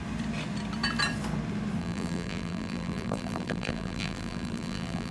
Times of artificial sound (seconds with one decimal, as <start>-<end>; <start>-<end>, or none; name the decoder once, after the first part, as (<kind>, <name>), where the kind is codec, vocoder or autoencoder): 1.8-5.1 (vocoder, BigVGAN v2)